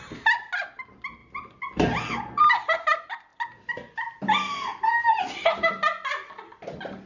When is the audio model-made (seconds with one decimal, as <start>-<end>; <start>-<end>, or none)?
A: none